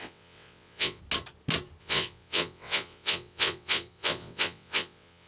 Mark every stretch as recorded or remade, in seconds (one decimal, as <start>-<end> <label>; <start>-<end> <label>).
0.0-1.0 remade; 1.0-1.8 recorded; 1.8-5.3 remade